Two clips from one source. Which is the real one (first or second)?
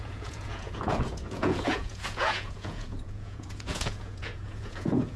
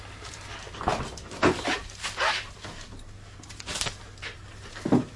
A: second